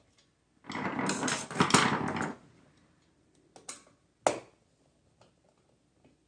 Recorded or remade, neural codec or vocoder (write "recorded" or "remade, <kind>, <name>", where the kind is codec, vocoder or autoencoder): recorded